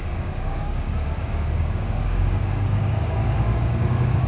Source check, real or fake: fake